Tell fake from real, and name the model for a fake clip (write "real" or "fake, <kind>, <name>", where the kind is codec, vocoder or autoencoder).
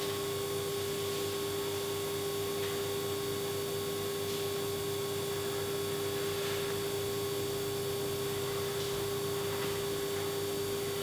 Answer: real